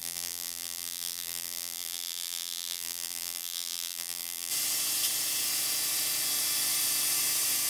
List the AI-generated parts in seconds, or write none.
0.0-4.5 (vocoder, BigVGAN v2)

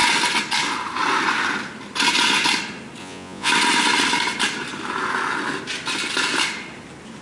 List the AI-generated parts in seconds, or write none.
3.0-3.5 (vocoder, Vocos)

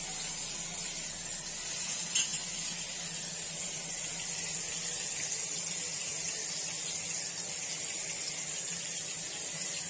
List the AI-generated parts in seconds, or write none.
none

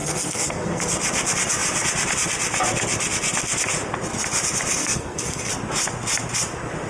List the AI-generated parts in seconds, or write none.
0.0-0.8 (codec, SNAC); 4.8-5.5

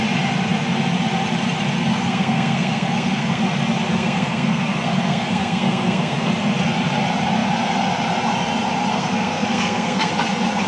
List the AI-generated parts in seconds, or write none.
1.9-3.4 (codec, SNAC); 3.9-6.3; 8.9-10.1

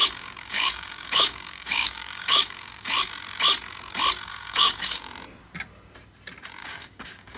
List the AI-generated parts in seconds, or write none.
0.0-3.1 (codec, DAC); 4.3-5.1; 6.6-7.4

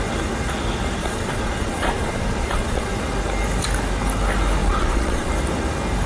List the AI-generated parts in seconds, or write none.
1.0-2.9 (vocoder, Vocos); 4.6-5.3

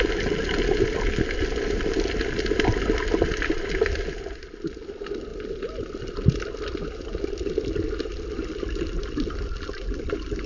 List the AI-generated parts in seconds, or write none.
none